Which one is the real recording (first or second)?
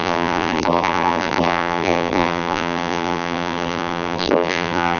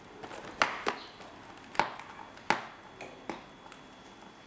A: second